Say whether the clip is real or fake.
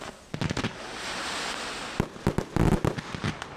real